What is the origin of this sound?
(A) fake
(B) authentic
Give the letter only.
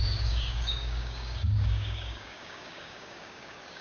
A